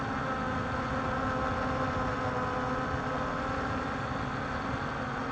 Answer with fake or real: real